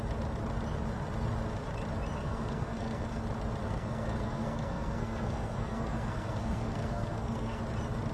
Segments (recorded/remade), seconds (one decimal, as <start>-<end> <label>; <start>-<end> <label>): 0.0-2.2 recorded; 2.2-3.2 remade; 3.2-3.6 recorded; 3.6-7.6 remade; 7.6-8.1 recorded